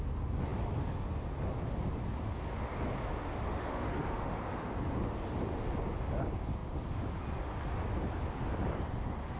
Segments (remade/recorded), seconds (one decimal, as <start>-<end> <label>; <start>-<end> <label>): 0.0-3.2 recorded; 3.2-4.4 remade; 4.4-9.4 recorded